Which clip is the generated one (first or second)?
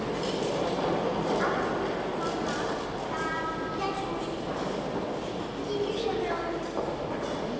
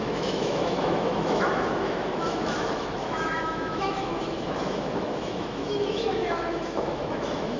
second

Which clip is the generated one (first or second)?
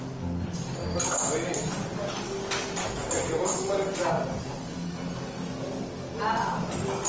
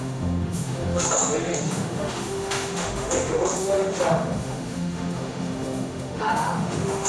second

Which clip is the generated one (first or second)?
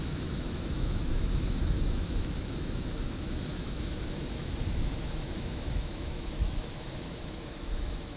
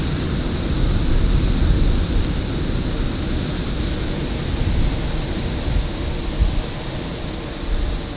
first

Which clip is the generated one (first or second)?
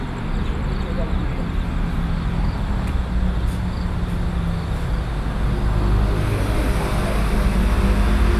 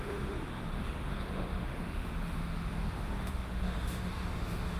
second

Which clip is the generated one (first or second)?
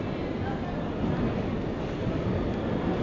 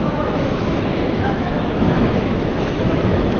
second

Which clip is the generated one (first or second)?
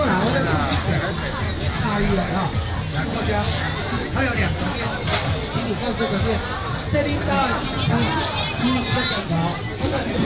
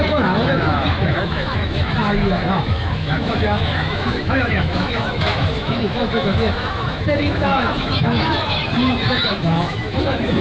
second